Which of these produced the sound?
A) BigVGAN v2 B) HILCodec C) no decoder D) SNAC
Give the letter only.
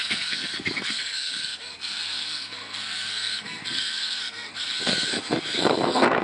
D